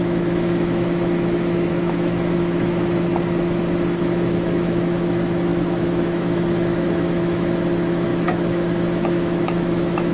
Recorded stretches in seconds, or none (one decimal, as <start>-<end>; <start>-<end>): 3.1-4.0